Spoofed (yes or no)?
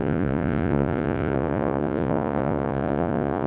yes